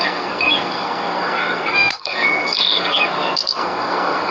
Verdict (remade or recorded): remade